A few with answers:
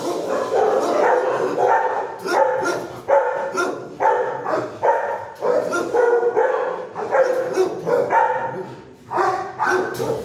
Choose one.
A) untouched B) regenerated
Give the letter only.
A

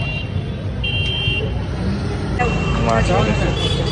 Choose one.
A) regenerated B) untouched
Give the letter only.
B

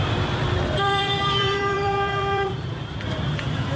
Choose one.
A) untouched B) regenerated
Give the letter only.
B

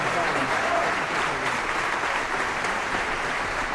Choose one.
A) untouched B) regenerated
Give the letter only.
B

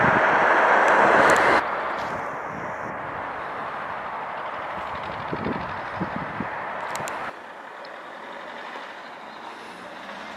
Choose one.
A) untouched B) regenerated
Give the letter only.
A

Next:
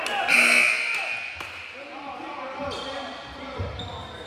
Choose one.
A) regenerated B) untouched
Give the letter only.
B